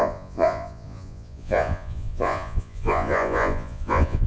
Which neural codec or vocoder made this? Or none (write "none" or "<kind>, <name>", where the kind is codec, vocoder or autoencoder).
vocoder, Vocos